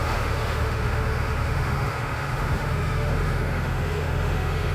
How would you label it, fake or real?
fake